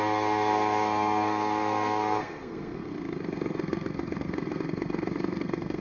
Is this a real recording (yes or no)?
no